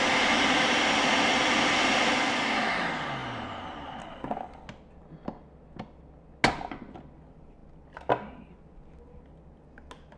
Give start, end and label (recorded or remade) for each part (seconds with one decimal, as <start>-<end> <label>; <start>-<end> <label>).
0.0-10.2 recorded

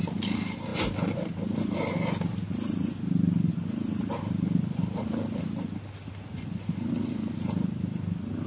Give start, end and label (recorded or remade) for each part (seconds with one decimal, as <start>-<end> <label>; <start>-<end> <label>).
0.0-8.5 recorded

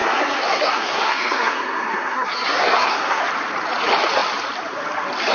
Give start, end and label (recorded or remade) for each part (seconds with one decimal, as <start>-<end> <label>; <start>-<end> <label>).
0.0-3.2 remade; 3.2-5.3 recorded

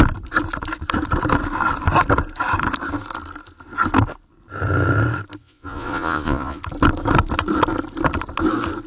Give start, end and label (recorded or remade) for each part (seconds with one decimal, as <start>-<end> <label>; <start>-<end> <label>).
0.0-5.4 recorded; 5.4-6.6 remade; 6.6-8.9 recorded

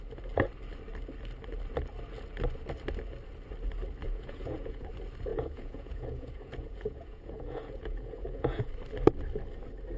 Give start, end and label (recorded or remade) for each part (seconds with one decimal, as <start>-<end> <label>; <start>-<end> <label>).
0.0-4.0 recorded; 4.0-4.8 remade; 4.8-5.3 recorded; 5.3-8.7 remade; 8.7-10.0 recorded

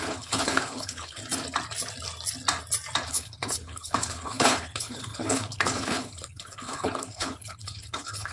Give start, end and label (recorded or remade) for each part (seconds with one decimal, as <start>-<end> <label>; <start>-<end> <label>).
0.0-1.2 remade; 1.2-3.1 recorded; 3.1-8.3 remade

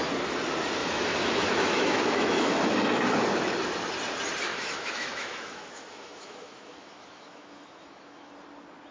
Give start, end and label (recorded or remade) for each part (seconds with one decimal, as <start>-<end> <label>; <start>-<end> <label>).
0.0-0.8 recorded; 0.8-2.7 remade; 2.7-4.5 recorded; 4.5-8.3 remade; 8.3-8.9 recorded